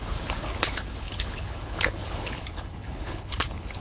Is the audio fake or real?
fake